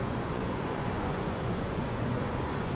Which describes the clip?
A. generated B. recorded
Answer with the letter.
A